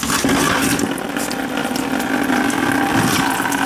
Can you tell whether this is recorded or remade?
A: recorded